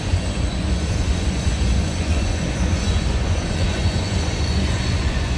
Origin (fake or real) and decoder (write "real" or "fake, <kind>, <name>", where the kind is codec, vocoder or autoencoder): fake, vocoder, Vocos